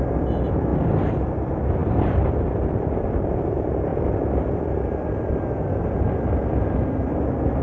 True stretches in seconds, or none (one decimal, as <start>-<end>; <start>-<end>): 0.0-0.7; 1.3-1.8; 3.4-3.9; 6.8-7.6